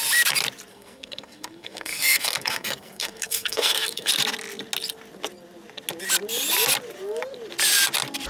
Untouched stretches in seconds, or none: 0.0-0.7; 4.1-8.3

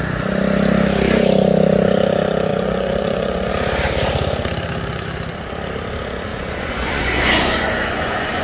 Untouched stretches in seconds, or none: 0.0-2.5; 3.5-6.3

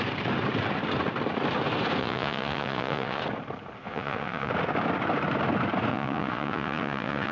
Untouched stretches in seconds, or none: 0.0-2.0; 3.2-3.8; 4.5-5.9

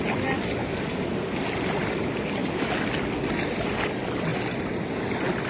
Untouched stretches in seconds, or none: 0.0-0.6; 1.4-2.4; 2.9-5.5

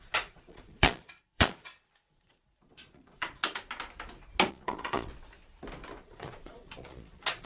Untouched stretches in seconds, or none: 3.4-4.5; 5.1-6.0

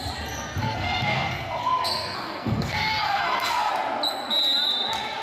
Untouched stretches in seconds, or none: 0.0-0.6; 3.7-5.2